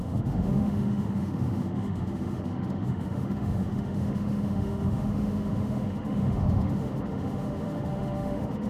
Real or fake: fake